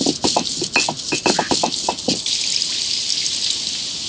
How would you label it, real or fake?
real